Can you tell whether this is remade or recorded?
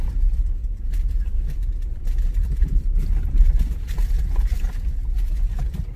recorded